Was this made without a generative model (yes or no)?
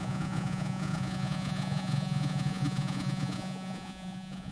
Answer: no